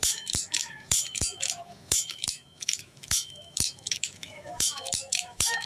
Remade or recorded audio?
remade